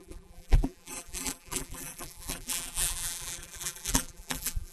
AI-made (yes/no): yes